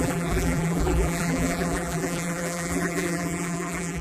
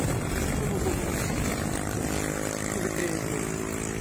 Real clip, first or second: second